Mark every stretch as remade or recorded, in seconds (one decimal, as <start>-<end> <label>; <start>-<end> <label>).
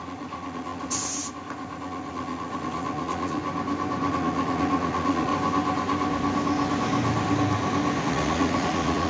0.0-3.4 remade; 3.4-4.1 recorded; 4.1-5.3 remade; 5.3-8.0 recorded; 8.0-9.1 remade